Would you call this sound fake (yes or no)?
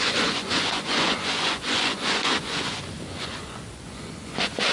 yes